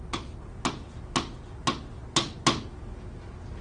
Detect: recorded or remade recorded